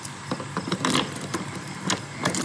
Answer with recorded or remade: recorded